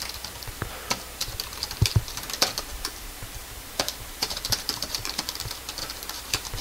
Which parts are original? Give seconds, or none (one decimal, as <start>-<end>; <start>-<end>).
0.0-1.2; 5.2-5.8